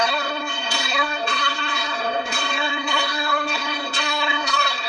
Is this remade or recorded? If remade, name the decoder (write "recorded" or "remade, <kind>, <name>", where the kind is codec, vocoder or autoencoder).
remade, codec, SNAC